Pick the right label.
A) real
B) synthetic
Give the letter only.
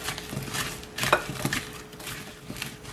A